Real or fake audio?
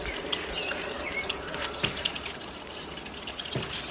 real